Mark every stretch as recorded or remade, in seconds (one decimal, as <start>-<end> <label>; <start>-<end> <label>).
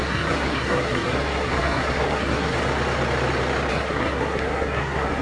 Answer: 0.0-2.6 remade; 2.6-3.7 recorded; 3.7-5.2 remade